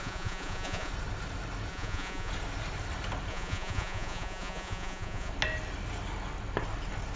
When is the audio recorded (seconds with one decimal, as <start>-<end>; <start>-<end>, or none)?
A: 0.9-1.7; 2.3-3.3; 5.3-7.2